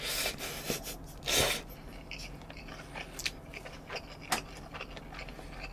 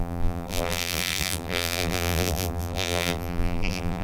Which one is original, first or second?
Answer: first